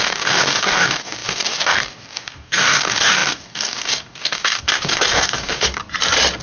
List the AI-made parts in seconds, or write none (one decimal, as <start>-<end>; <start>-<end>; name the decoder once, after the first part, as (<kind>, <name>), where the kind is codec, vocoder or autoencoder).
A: 0.0-5.8 (codec, DAC)